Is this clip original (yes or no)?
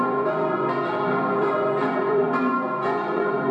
no